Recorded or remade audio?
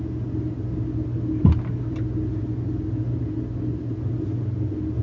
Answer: recorded